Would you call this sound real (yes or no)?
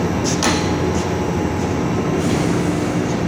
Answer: yes